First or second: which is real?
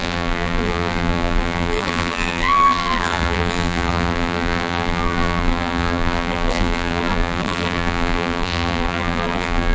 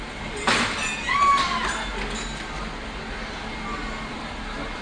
second